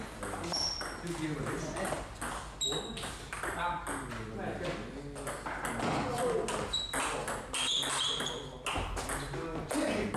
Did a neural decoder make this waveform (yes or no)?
no